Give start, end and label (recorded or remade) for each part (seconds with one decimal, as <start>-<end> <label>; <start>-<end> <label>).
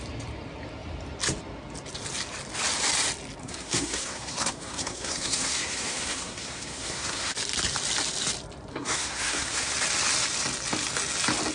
0.0-3.4 recorded; 3.4-7.3 remade; 7.3-8.7 recorded; 8.7-9.7 remade; 9.7-11.5 recorded